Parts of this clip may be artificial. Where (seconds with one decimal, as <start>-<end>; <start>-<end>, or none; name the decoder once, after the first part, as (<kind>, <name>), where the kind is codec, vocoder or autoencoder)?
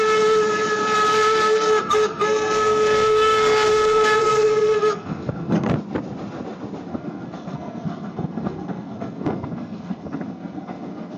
1.1-5.7 (codec, SNAC); 6.9-11.2